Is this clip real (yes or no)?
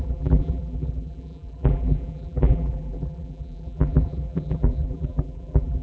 no